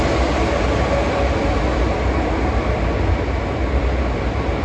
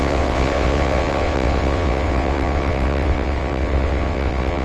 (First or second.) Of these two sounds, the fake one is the second